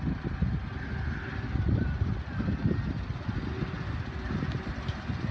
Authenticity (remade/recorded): recorded